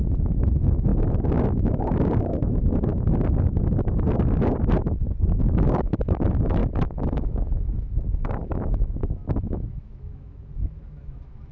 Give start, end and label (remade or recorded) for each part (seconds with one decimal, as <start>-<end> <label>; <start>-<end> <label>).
0.0-2.9 remade; 2.9-5.4 recorded; 5.4-11.5 remade